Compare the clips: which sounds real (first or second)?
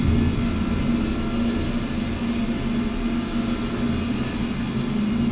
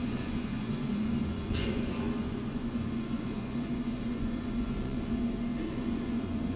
first